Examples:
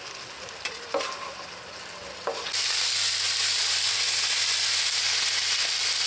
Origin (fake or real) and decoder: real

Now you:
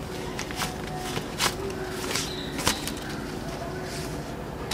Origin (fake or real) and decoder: real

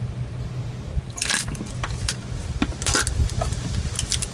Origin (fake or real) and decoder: real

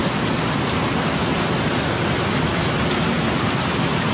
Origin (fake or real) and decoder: real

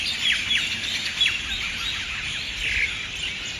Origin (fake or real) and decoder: real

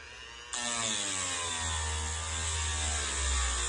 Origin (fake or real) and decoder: real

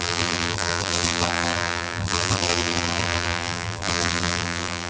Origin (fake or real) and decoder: fake, vocoder, BigVGAN v2